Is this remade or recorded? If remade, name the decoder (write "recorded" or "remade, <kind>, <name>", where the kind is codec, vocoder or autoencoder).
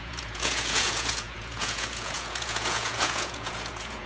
remade, vocoder, Vocos